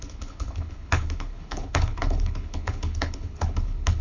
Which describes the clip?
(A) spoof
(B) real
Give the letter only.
A